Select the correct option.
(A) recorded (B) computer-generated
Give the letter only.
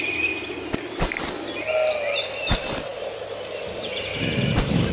A